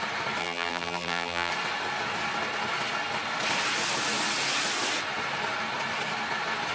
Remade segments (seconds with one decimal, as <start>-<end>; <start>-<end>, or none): 0.4-1.5